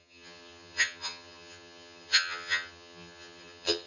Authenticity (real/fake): fake